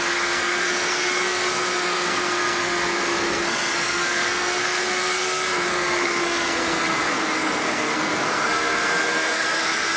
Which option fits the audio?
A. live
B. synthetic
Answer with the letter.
B